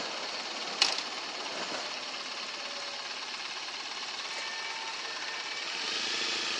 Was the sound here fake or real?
real